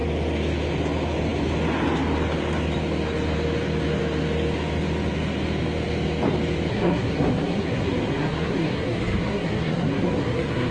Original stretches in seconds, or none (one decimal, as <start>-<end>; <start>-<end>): 0.0-6.7